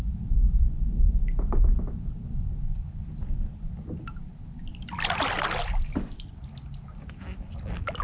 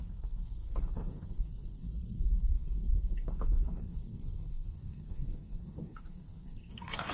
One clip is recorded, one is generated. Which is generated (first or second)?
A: second